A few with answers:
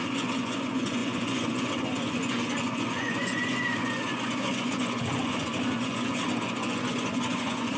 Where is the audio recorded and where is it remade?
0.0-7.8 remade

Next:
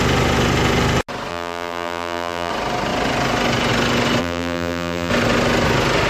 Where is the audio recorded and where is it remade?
0.0-1.3 recorded; 1.3-2.5 remade; 2.5-4.2 recorded; 4.2-5.1 remade; 5.1-6.1 recorded

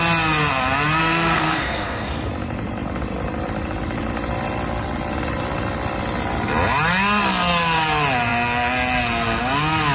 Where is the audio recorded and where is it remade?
0.0-1.0 recorded; 1.0-2.3 remade; 2.3-9.9 recorded

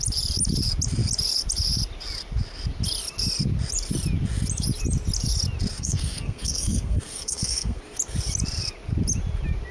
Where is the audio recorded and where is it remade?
0.0-5.7 recorded; 5.7-7.8 remade; 7.8-9.7 recorded